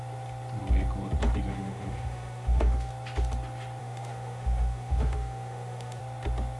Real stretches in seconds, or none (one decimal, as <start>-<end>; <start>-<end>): 0.0-1.5; 2.9-3.8; 6.0-6.6